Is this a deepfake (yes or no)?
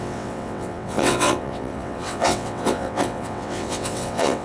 yes